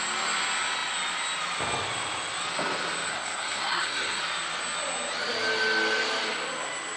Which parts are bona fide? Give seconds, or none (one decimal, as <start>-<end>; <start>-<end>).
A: 0.0-3.1; 4.2-7.0